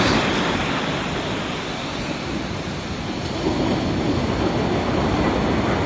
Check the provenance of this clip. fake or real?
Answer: real